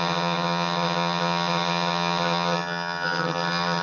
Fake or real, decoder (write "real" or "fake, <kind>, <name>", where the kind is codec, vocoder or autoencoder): fake, vocoder, HiFi-GAN